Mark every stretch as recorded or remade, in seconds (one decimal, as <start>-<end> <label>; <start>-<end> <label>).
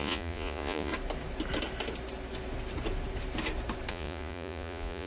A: 0.0-0.9 remade; 0.9-3.9 recorded; 3.9-5.1 remade